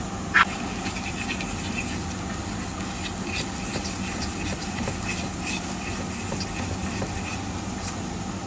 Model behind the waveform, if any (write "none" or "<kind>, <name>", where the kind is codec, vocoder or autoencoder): none